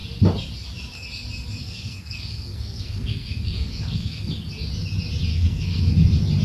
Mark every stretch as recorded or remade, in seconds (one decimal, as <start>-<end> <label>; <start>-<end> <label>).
0.0-1.6 recorded; 1.6-4.3 remade; 4.3-5.3 recorded; 5.3-5.8 remade; 5.8-6.4 recorded